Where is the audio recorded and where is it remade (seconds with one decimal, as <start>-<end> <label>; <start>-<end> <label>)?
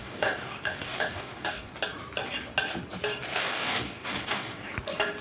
0.0-1.7 remade; 1.7-3.4 recorded; 3.4-4.7 remade; 4.7-5.2 recorded